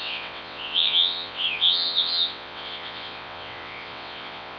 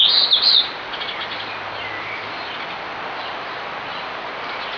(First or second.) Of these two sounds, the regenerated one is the first